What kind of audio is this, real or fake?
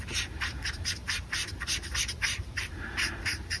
fake